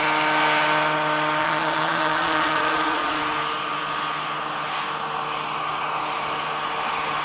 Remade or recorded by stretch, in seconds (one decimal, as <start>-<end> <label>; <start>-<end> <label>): 0.0-1.4 recorded; 1.4-3.2 remade; 3.2-7.2 recorded